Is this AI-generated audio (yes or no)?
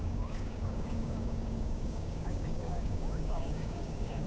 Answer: yes